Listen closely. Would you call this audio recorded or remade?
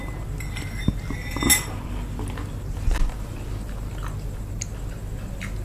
recorded